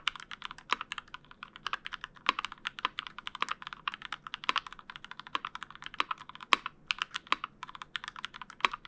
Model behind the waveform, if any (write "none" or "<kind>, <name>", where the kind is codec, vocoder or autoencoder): none